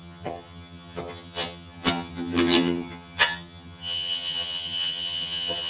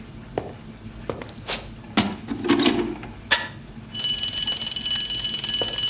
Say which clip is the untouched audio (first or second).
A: second